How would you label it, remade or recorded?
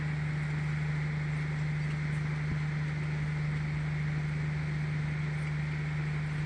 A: recorded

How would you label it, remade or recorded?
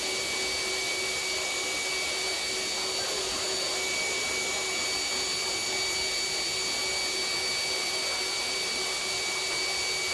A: recorded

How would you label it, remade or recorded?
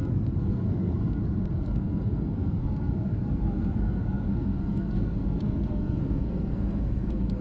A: remade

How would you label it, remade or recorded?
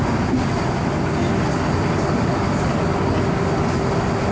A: recorded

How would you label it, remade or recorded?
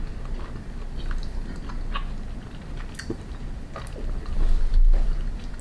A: recorded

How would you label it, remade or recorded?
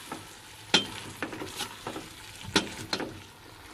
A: recorded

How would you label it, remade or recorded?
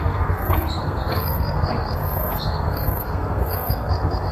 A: remade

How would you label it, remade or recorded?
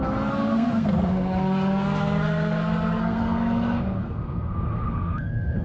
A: remade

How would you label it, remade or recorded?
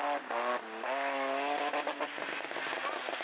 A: recorded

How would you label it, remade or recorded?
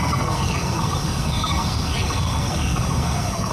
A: remade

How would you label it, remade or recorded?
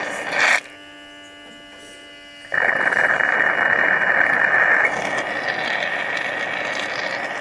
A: recorded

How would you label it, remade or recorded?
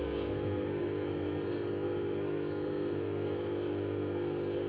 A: remade